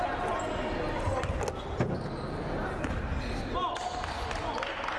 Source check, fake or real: real